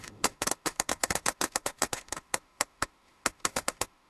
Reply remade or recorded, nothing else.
remade